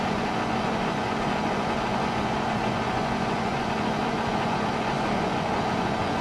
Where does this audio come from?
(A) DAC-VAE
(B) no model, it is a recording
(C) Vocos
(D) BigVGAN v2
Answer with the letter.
C